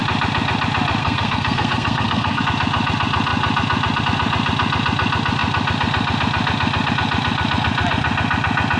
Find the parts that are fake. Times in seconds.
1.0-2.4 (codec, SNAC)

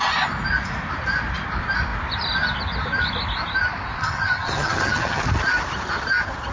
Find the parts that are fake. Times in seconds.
4.0-5.2 (vocoder, HiFi-GAN)

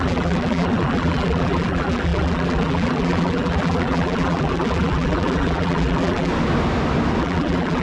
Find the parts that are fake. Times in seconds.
0.0-6.3 (vocoder, BigVGAN v2); 7.2-7.8